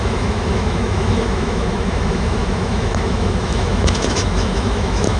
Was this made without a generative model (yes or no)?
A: no